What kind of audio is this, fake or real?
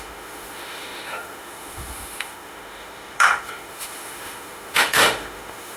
fake